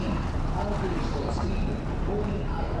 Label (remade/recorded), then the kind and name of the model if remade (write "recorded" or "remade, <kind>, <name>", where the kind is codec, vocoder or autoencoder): recorded